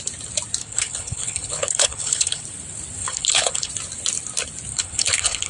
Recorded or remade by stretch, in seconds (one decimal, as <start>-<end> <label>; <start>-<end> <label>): 0.0-0.6 recorded; 0.6-2.4 remade; 2.4-3.0 recorded; 3.0-3.7 remade; 3.7-4.7 recorded; 4.7-5.5 remade